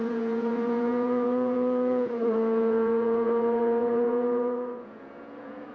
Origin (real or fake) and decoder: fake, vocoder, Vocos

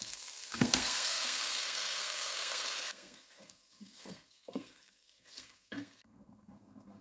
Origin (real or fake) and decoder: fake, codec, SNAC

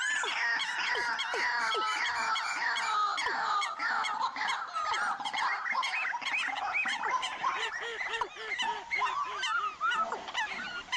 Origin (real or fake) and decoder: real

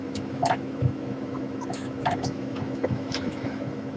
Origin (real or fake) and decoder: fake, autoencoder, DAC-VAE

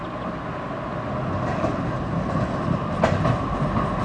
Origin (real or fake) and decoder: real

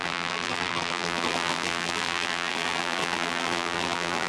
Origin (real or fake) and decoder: fake, vocoder, BigVGAN v2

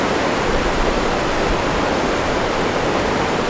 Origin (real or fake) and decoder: fake, vocoder, BigVGAN v2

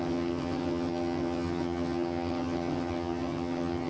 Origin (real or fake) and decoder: fake, vocoder, HiFi-GAN